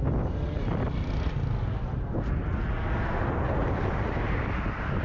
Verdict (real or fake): real